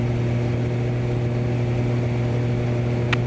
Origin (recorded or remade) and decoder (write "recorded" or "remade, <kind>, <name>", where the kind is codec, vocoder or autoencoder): recorded